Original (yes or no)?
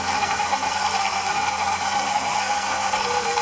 no